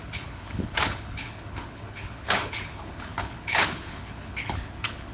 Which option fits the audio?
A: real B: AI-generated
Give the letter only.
B